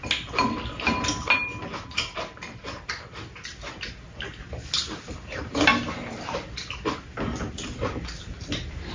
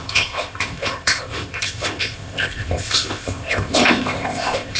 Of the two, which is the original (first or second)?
first